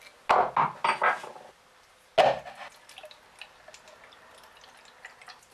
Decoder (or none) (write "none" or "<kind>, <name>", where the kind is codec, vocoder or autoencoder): none